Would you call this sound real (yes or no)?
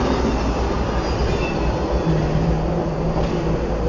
yes